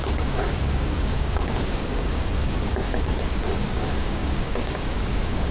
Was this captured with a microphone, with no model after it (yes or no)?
no